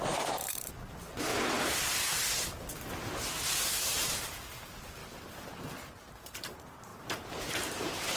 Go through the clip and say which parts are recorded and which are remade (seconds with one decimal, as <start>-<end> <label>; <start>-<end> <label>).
0.0-1.3 remade; 1.3-3.5 recorded; 3.5-5.0 remade; 5.0-6.1 recorded; 6.1-8.2 remade